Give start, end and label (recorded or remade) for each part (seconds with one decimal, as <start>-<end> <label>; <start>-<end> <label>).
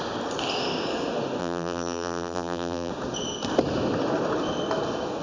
0.0-1.4 recorded; 1.4-2.9 remade; 2.9-5.2 recorded